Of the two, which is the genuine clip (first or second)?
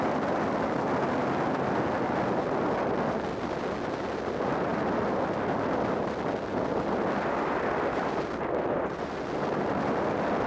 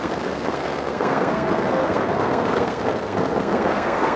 first